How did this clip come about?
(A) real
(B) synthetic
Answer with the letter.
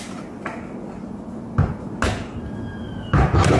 A